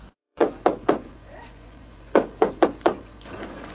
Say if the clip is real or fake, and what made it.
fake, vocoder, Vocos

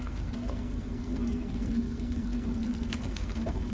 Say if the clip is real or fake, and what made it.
fake, codec, SNAC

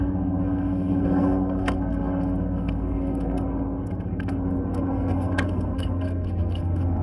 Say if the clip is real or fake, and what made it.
fake, codec, SNAC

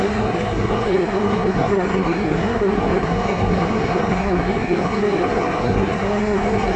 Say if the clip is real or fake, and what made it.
fake, codec, SNAC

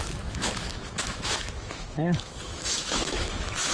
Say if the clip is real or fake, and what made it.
fake, autoencoder, DAC-VAE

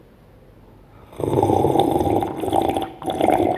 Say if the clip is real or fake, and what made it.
real